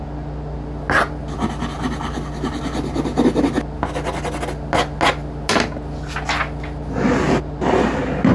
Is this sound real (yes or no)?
yes